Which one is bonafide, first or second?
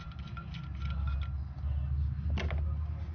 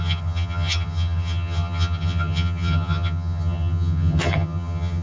first